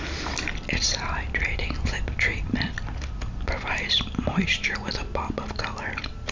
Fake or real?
real